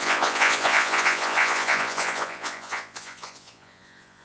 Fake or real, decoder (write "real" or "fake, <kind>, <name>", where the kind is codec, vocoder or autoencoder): fake, vocoder, Vocos